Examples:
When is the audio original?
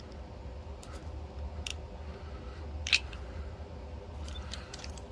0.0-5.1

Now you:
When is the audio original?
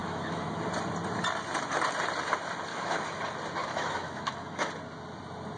0.6-2.7; 3.2-3.6; 4.7-5.6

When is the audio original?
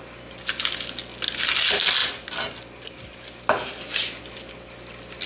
0.0-5.3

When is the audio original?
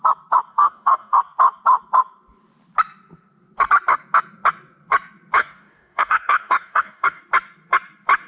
0.0-0.5; 1.2-5.4; 7.2-8.3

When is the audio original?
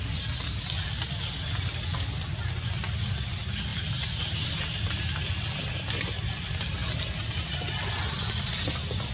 0.0-3.7; 4.5-9.1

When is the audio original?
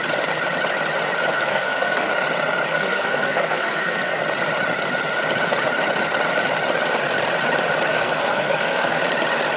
0.0-1.3; 2.1-2.7; 4.2-7.9; 9.0-9.6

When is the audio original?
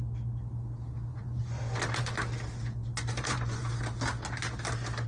0.0-1.1; 1.6-2.8; 3.6-5.1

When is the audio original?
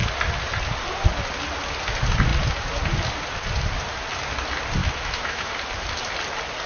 0.0-4.8; 5.5-6.7